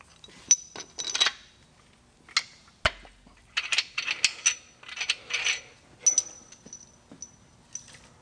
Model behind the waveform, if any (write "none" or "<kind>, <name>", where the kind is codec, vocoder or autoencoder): none